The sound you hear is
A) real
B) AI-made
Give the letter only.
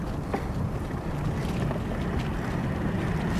A